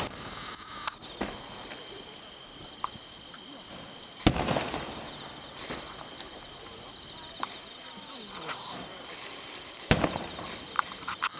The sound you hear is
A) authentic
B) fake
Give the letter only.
A